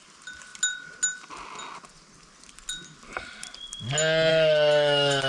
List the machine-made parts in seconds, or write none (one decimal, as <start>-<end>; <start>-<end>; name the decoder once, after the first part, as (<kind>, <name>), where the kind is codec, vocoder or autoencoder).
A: 4.3-5.3 (autoencoder, DAC-VAE)